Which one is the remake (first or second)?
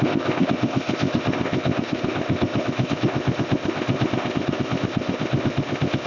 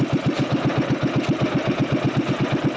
first